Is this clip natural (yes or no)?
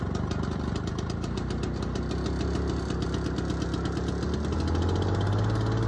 yes